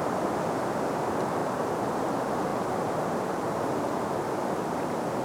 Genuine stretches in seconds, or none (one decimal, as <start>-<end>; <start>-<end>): 0.0-1.4; 2.0-5.2